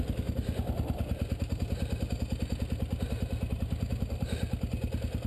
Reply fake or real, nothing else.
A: real